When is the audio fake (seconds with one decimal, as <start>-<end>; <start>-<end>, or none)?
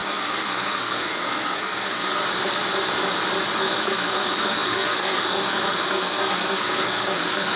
0.0-2.2; 3.6-7.6